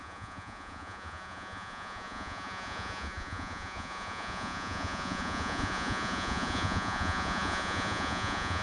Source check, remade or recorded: remade